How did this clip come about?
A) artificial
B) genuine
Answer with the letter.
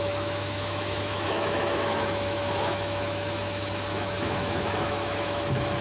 A